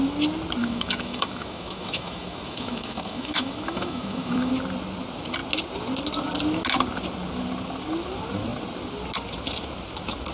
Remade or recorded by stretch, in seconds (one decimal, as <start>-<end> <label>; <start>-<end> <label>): 0.0-0.6 recorded; 0.6-4.5 remade; 4.5-10.3 recorded